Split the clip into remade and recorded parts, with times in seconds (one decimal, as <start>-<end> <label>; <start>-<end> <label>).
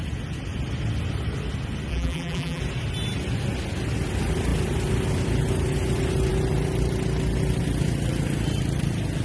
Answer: 0.0-1.9 recorded; 1.9-2.6 remade; 2.6-9.2 recorded